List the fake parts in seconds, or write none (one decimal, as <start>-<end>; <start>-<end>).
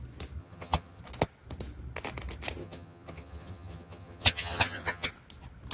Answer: 0.4-1.0; 2.6-5.1